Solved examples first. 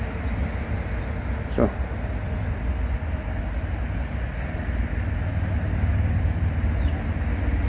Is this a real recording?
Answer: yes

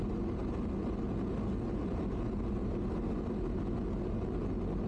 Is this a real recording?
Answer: yes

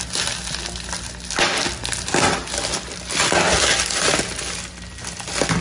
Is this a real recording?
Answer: yes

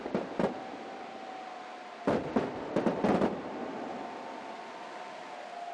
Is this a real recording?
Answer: yes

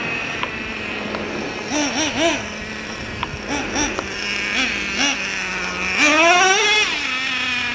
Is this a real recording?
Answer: yes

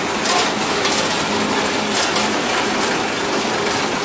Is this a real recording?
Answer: yes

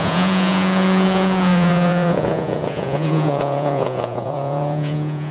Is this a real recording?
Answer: no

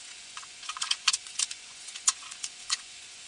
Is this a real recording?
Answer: no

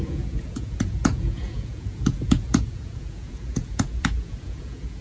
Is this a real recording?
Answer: no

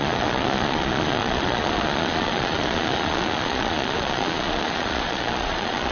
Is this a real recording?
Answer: no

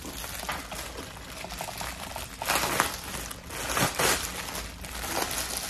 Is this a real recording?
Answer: yes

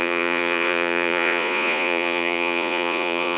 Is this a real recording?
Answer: no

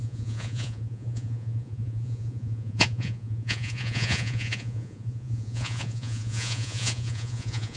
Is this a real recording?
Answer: no